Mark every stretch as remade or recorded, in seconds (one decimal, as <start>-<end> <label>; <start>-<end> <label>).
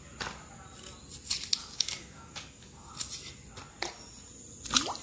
0.0-1.6 recorded; 1.6-2.9 remade; 2.9-5.0 recorded